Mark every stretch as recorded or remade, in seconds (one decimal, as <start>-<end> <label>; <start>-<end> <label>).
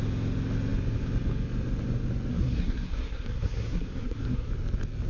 0.0-2.3 recorded; 2.3-4.5 remade; 4.5-5.1 recorded